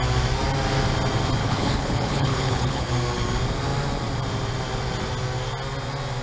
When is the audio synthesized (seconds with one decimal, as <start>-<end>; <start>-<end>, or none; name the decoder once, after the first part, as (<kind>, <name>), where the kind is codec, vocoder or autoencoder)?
1.4-2.9 (codec, HILCodec)